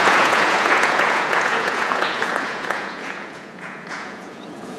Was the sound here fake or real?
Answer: fake